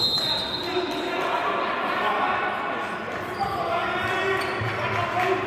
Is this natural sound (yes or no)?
yes